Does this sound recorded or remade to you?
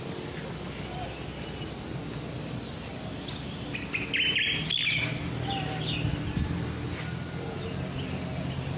recorded